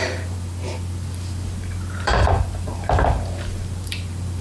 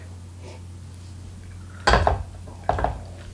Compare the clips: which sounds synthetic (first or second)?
first